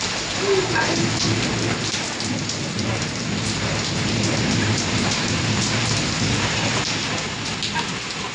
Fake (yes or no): no